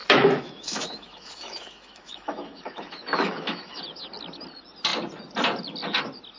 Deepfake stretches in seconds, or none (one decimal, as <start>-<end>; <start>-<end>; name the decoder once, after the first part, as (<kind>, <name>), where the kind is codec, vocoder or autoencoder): 0.0-3.8 (autoencoder, DAC-VAE)